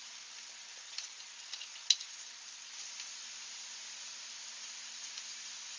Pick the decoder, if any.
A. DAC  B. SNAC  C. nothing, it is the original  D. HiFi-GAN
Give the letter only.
C